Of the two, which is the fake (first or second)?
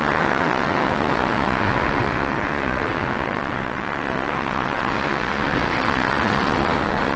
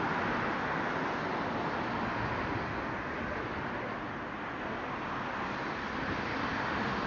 first